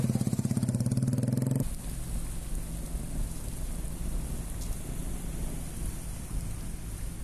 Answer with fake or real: real